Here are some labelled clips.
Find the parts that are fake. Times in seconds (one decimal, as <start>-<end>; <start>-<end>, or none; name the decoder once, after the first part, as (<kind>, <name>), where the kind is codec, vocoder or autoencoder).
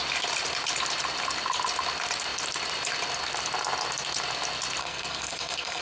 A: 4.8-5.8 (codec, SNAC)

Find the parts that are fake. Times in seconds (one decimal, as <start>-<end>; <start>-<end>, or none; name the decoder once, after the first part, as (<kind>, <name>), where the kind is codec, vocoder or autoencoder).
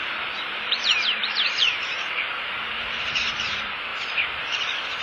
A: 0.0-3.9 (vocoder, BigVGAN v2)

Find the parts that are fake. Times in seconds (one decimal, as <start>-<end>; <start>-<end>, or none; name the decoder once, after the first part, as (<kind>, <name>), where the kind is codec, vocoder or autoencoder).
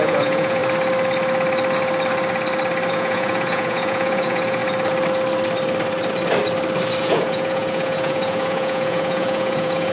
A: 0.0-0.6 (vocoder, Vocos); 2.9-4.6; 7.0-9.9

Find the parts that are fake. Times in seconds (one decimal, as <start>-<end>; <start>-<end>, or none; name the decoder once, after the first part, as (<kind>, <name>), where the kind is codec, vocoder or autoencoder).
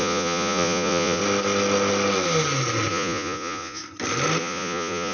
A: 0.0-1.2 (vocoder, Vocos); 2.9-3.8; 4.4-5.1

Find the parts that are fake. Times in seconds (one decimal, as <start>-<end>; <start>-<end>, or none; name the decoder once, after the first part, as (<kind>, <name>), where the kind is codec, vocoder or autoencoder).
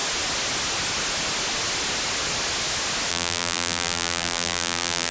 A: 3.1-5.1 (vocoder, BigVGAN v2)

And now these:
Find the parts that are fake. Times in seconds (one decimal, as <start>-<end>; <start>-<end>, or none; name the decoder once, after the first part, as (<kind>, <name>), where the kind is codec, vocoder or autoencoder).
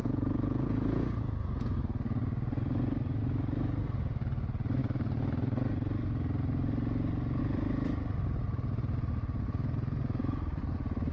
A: 0.0-1.8 (vocoder, Vocos)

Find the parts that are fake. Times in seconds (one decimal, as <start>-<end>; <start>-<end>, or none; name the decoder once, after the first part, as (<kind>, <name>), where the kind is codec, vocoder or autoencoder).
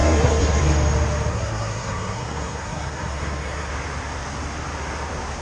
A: 0.0-0.6 (codec, SNAC); 1.3-3.7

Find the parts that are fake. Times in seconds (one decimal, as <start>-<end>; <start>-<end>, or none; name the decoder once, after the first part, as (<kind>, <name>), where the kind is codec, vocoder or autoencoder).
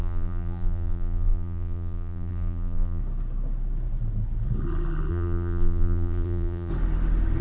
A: 0.0-3.0 (vocoder, BigVGAN v2); 5.1-6.7